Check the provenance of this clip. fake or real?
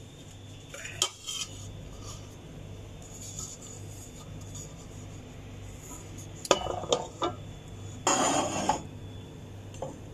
real